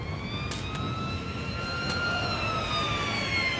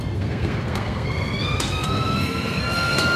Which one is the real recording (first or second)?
first